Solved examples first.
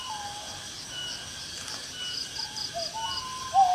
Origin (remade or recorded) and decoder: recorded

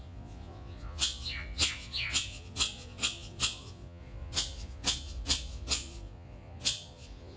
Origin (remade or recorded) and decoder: remade, vocoder, Vocos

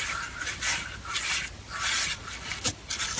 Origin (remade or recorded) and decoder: recorded